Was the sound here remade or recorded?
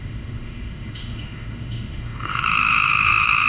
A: remade